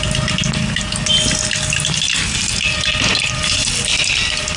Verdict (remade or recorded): recorded